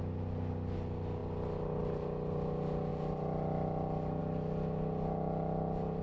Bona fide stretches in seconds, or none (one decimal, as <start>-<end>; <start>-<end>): 0.0-6.0